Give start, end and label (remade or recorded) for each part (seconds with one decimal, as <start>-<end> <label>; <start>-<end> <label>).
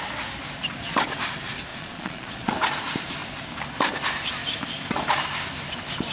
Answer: 0.0-1.7 recorded; 1.7-2.5 remade; 2.5-6.1 recorded